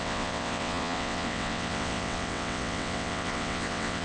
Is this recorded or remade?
remade